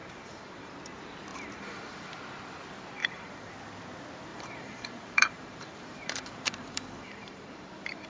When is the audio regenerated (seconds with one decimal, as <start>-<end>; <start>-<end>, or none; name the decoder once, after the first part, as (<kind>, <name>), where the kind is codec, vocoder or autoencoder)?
0.0-0.7 (vocoder, BigVGAN v2); 1.3-2.1; 3.0-3.5; 4.3-8.1